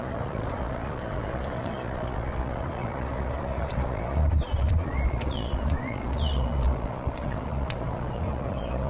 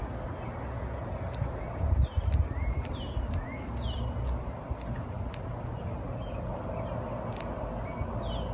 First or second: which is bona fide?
second